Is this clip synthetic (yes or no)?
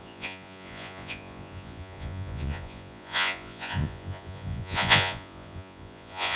yes